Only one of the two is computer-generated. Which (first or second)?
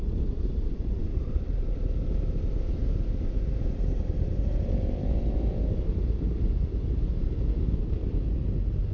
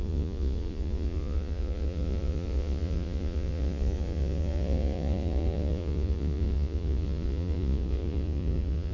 second